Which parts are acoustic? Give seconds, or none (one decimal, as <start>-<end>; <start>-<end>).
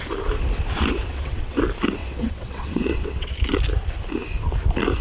0.0-1.1; 1.6-2.0; 3.4-5.0